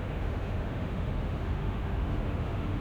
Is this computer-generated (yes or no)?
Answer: yes